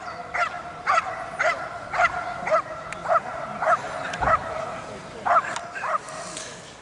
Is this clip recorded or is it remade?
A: recorded